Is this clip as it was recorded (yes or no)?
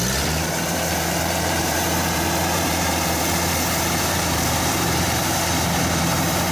no